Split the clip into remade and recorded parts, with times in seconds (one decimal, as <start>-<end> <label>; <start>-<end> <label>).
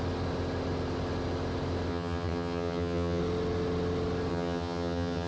0.0-1.9 recorded; 1.9-3.2 remade; 3.2-4.3 recorded; 4.3-5.3 remade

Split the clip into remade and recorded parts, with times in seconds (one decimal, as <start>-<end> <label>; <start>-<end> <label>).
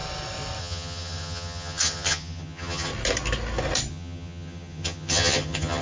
0.0-0.6 recorded; 0.6-2.9 remade; 2.9-3.9 recorded; 3.9-5.8 remade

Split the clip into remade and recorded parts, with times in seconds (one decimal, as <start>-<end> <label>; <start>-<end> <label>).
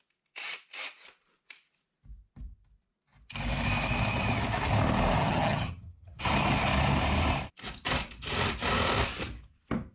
0.0-5.2 recorded; 5.2-6.2 remade; 6.2-9.9 recorded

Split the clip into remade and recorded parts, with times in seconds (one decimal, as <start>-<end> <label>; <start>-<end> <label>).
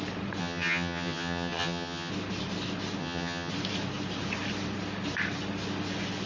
0.0-0.4 recorded; 0.4-2.1 remade; 2.1-3.0 recorded; 3.0-3.5 remade; 3.5-6.3 recorded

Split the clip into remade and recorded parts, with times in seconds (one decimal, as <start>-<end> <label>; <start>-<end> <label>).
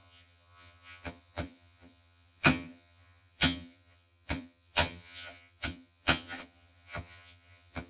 0.0-7.9 remade